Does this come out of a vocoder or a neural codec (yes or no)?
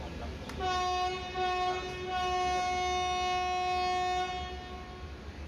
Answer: no